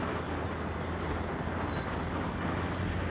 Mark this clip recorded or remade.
recorded